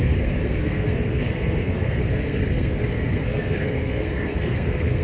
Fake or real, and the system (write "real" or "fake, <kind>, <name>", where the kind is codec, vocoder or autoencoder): fake, codec, SNAC